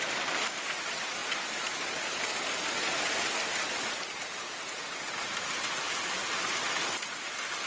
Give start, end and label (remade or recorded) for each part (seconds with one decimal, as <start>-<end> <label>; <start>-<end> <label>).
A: 0.0-7.7 recorded